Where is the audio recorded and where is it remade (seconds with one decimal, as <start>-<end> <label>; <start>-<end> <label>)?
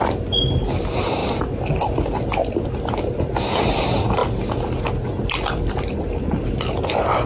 0.0-7.3 recorded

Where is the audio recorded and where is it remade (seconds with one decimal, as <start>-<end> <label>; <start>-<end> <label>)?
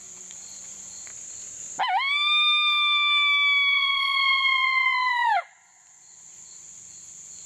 0.0-1.1 remade; 1.1-3.7 recorded; 3.7-7.5 remade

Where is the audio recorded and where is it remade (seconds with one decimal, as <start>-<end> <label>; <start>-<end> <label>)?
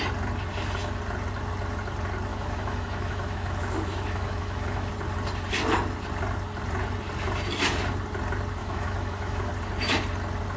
0.0-2.3 recorded; 2.3-4.9 remade; 4.9-8.6 recorded; 8.6-9.5 remade; 9.5-10.6 recorded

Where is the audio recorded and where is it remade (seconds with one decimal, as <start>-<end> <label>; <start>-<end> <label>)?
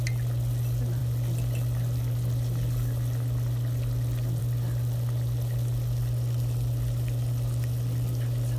0.0-8.6 recorded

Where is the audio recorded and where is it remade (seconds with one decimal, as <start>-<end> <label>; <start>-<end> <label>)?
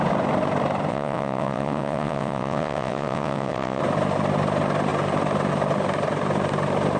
0.0-0.9 recorded; 0.9-3.8 remade; 3.8-7.0 recorded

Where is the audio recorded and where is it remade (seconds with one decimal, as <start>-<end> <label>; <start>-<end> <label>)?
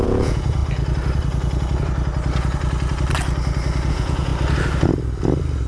0.0-0.6 remade; 0.6-3.9 recorded; 3.9-4.3 remade; 4.3-5.7 recorded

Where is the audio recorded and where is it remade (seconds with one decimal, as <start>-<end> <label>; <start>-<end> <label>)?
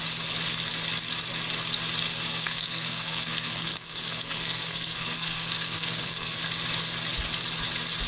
0.0-2.3 recorded; 2.3-6.4 remade; 6.4-8.1 recorded